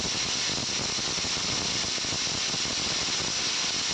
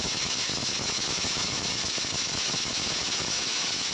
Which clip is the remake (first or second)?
second